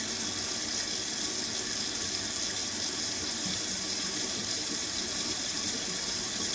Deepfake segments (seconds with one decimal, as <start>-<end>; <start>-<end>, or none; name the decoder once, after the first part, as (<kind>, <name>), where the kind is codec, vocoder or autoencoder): 2.6-6.5 (vocoder, BigVGAN v2)